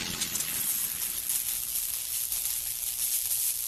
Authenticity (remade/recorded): recorded